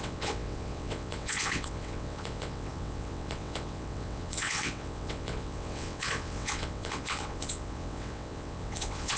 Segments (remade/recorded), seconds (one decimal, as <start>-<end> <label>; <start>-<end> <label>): 0.0-9.2 remade